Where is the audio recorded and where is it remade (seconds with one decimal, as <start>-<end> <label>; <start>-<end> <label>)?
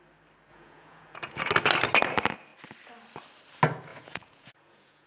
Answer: 0.0-0.5 recorded; 0.5-1.5 remade; 1.5-3.9 recorded; 3.9-5.1 remade